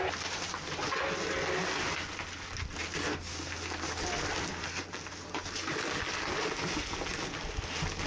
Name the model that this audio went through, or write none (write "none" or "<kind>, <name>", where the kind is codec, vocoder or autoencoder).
none